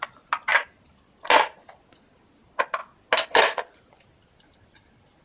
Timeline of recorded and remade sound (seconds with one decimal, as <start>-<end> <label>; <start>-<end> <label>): 0.0-5.2 recorded